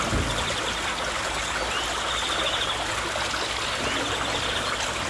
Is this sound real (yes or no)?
yes